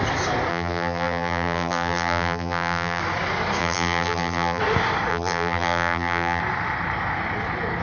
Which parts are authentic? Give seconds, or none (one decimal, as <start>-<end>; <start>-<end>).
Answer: 0.0-0.5; 3.0-3.6; 4.6-5.1; 6.4-7.8